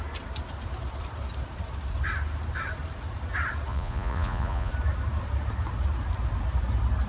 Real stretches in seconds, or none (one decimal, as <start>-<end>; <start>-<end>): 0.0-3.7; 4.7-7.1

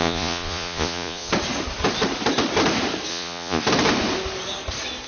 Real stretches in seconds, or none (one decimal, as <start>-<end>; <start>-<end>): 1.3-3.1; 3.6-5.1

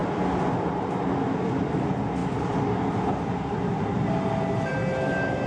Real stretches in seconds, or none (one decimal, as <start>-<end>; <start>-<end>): 0.0-5.5

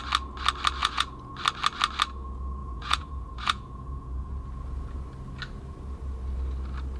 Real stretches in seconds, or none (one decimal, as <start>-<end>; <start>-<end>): 0.0-0.8; 1.3-2.6; 4.3-7.0

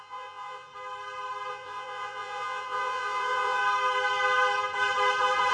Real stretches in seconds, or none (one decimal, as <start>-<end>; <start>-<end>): 0.7-1.5; 3.6-5.5

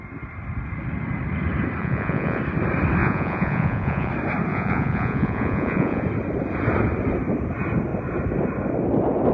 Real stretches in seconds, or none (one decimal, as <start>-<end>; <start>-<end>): 0.0-1.8; 2.4-3.0; 4.1-4.5; 6.0-9.3